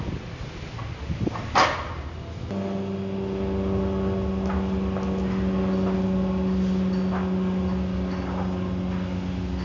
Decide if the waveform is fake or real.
real